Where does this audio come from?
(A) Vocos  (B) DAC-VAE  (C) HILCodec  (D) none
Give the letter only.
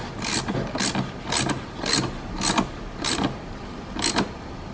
D